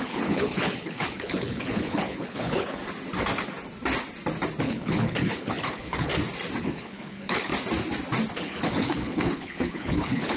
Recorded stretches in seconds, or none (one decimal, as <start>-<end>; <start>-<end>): 2.8-4.6; 6.1-6.6; 7.5-8.4